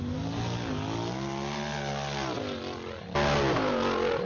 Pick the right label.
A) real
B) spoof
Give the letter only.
A